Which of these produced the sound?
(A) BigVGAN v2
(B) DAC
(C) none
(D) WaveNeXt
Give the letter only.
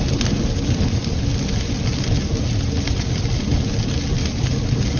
C